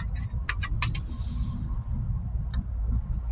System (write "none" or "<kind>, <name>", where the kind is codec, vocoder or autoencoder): none